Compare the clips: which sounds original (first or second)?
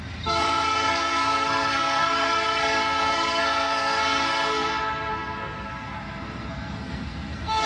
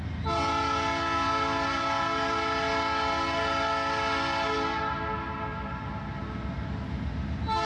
second